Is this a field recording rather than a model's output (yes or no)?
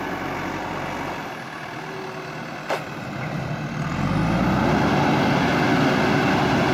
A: yes